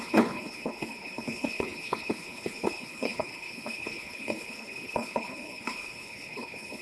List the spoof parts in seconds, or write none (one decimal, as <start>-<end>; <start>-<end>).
0.0-6.8